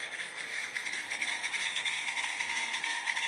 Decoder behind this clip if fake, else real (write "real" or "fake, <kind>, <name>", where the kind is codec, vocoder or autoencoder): fake, codec, SNAC